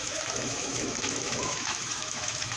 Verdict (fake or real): fake